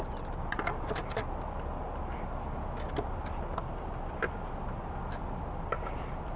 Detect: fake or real real